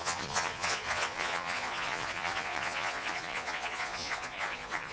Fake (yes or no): yes